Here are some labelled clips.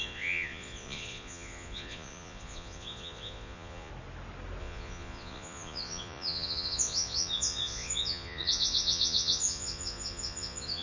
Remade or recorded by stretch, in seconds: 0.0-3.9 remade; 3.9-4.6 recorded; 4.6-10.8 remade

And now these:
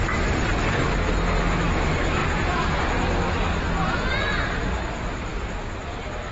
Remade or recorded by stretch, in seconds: 0.0-2.2 recorded; 2.2-2.8 remade; 2.8-3.8 recorded; 3.8-4.5 remade; 4.5-5.3 recorded; 5.3-5.8 remade; 5.8-6.3 recorded

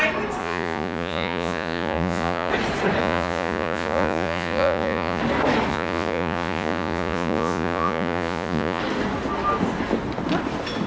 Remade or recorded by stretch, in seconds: 0.0-0.4 recorded; 0.4-2.5 remade; 2.5-3.0 recorded; 3.0-5.2 remade; 5.2-5.7 recorded; 5.7-8.8 remade; 8.8-10.9 recorded

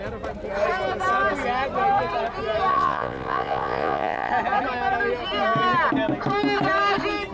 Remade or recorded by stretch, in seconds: 0.0-2.7 recorded; 2.7-4.3 remade; 4.3-7.3 recorded